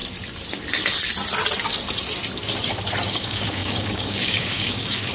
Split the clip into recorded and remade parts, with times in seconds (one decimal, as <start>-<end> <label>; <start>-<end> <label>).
0.0-3.1 recorded; 3.1-5.1 remade